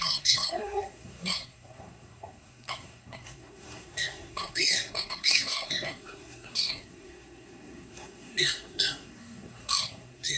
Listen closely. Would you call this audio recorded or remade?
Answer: remade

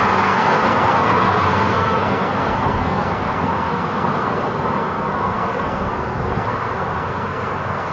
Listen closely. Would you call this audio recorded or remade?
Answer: remade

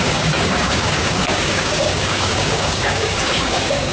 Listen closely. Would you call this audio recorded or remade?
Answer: remade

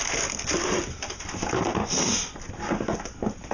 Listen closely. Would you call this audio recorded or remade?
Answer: recorded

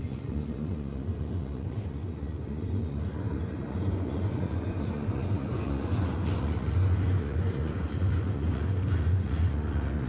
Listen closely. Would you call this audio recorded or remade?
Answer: remade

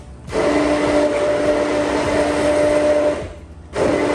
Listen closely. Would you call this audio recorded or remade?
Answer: recorded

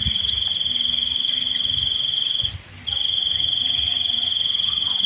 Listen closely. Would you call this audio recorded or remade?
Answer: recorded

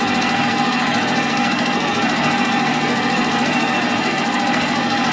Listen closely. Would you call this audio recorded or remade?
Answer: remade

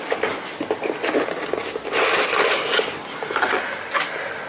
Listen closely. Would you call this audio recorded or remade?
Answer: recorded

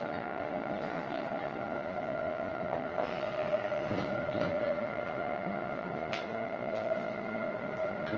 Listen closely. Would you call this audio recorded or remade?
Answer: remade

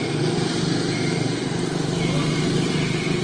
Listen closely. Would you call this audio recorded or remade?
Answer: recorded